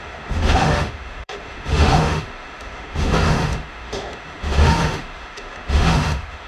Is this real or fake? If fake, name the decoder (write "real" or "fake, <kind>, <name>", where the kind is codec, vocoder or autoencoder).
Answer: fake, autoencoder, DAC-VAE